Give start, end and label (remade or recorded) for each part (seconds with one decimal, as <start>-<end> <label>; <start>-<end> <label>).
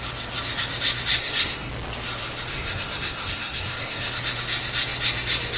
0.0-1.2 recorded; 1.2-1.7 remade; 1.7-2.5 recorded; 2.5-4.1 remade; 4.1-5.6 recorded